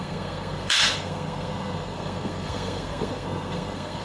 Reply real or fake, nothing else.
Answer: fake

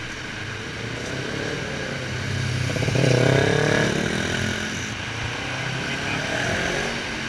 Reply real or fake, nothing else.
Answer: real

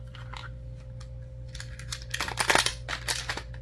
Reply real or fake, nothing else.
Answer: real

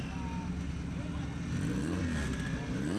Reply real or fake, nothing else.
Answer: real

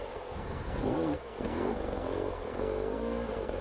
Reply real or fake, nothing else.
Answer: fake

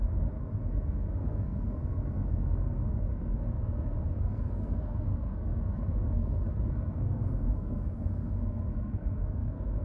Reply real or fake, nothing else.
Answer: fake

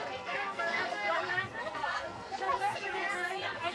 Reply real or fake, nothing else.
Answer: fake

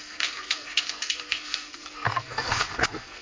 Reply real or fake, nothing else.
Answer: fake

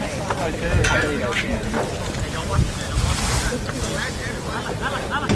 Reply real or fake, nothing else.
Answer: real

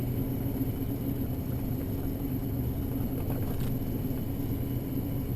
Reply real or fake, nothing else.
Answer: real